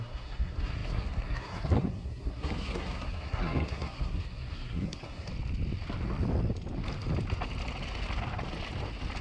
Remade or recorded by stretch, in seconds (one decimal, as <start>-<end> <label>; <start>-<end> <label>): 0.0-5.3 remade; 5.3-9.2 recorded